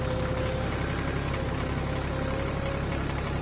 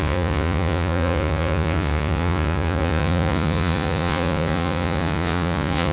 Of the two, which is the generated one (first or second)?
second